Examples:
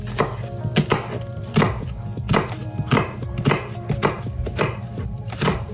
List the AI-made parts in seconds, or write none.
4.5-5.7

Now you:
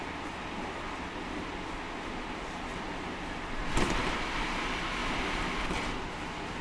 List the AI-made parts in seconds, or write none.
5.0-5.6

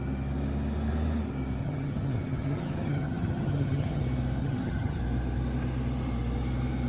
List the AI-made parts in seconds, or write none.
1.6-4.0; 4.4-5.0

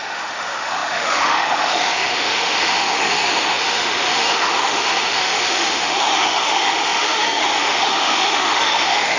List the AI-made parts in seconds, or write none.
0.0-9.2

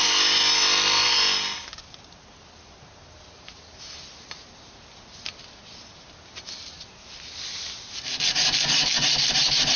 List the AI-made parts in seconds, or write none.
none

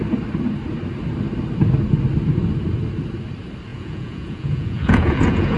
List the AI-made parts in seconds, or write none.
3.7-5.6